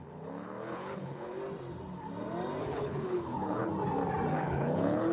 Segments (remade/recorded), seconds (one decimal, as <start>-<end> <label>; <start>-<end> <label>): 0.0-1.4 remade; 1.4-2.6 recorded; 2.6-3.7 remade; 3.7-4.3 recorded; 4.3-5.1 remade

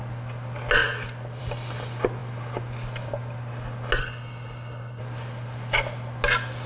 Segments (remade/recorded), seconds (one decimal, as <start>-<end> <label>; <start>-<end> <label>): 0.0-4.0 recorded; 4.0-5.0 remade; 5.0-6.7 recorded